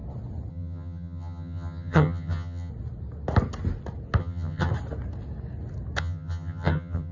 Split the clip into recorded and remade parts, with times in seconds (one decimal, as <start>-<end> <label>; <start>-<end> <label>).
0.0-0.5 recorded; 0.5-2.7 remade; 2.7-4.2 recorded; 4.2-4.7 remade; 4.7-6.0 recorded; 6.0-7.1 remade